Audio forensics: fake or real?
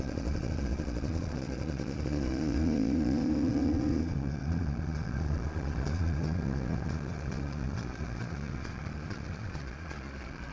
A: fake